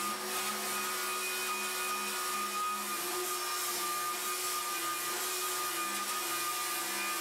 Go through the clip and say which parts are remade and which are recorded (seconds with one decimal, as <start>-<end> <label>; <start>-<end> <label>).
0.0-7.2 recorded